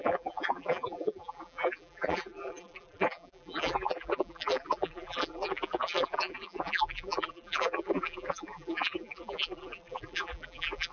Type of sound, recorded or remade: remade